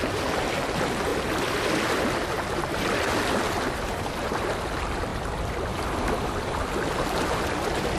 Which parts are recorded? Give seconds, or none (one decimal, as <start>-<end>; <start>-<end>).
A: 0.0-5.1; 6.2-8.0